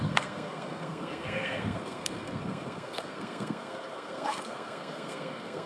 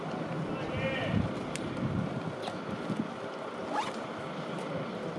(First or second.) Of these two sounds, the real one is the second